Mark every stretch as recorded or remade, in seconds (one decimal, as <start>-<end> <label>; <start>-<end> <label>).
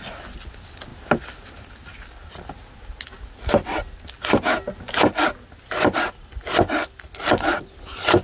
0.0-8.2 recorded